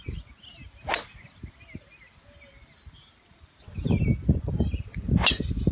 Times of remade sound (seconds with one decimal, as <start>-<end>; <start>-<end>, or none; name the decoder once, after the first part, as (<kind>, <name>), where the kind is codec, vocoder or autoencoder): 2.1-4.1 (vocoder, BigVGAN v2)